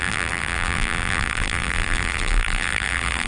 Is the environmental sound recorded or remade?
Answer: remade